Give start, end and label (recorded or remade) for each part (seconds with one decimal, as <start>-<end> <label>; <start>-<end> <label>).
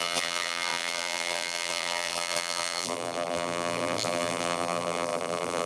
0.0-5.7 remade